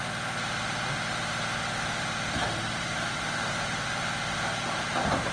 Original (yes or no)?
yes